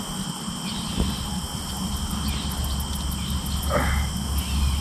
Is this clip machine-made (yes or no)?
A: no